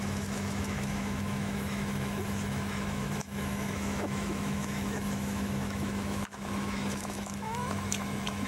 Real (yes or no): no